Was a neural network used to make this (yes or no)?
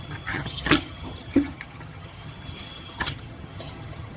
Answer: yes